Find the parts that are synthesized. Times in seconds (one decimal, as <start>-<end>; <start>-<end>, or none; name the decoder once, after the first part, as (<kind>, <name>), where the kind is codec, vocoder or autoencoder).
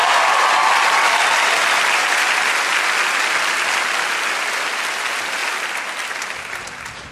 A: none